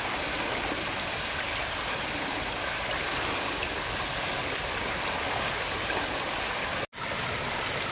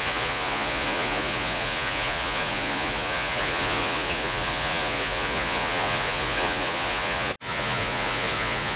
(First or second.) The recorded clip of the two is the first